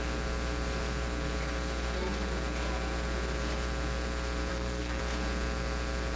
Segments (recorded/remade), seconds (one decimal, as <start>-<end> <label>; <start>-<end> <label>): 0.0-4.5 recorded; 4.5-5.0 remade; 5.0-6.2 recorded